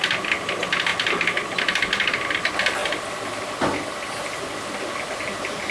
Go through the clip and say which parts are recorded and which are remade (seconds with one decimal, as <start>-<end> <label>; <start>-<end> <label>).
0.0-5.7 recorded